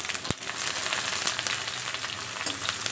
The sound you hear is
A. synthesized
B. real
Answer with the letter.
B